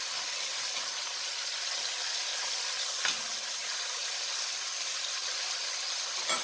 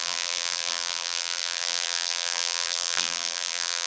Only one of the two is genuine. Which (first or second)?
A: first